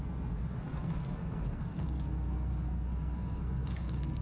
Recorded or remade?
remade